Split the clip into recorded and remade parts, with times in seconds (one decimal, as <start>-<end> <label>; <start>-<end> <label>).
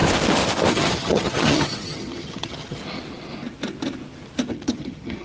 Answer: 0.0-0.7 recorded; 0.7-2.8 remade; 2.8-4.5 recorded; 4.5-5.2 remade